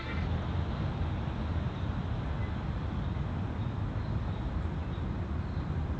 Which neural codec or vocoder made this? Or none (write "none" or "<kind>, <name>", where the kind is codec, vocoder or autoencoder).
none